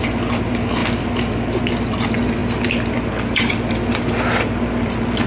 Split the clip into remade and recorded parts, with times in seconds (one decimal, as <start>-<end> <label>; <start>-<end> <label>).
0.0-0.8 recorded; 0.8-1.6 remade; 1.6-2.4 recorded; 2.4-3.5 remade; 3.5-5.3 recorded